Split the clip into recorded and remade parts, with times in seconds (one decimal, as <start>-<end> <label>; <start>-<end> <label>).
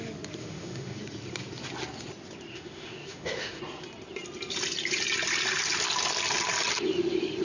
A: 0.0-0.4 recorded; 0.4-1.0 remade; 1.0-2.5 recorded; 2.5-3.6 remade; 3.6-7.4 recorded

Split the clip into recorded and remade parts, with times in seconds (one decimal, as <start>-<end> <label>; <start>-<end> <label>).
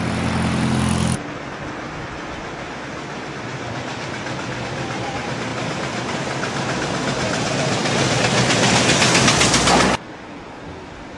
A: 0.0-11.2 recorded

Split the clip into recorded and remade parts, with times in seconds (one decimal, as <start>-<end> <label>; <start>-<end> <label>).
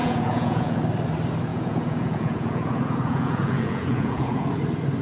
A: 0.0-0.8 remade; 0.8-1.5 recorded; 1.5-4.5 remade; 4.5-5.0 recorded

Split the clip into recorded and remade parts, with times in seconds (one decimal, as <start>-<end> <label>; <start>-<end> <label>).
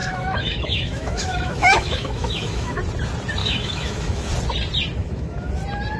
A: 0.0-2.8 remade; 2.8-3.4 recorded; 3.4-4.3 remade; 4.3-5.0 recorded; 5.0-5.5 remade; 5.5-6.0 recorded